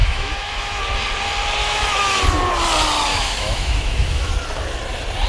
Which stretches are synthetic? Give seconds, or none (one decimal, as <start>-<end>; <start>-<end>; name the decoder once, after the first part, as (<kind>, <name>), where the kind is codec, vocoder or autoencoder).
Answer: 0.0-0.8 (autoencoder, DAC-VAE); 1.6-2.2; 3.1-4.3